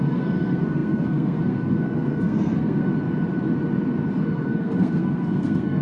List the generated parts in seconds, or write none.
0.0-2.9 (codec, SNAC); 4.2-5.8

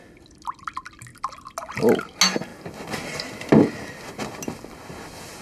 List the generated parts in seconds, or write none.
none

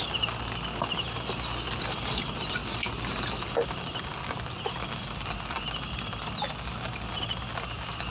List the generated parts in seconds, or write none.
none

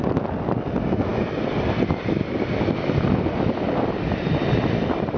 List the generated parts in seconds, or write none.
none

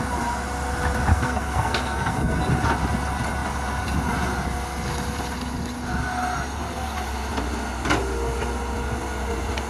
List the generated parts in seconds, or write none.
1.1-2.4 (codec, SNAC)

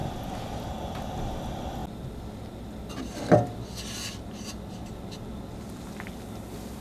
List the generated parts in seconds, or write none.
none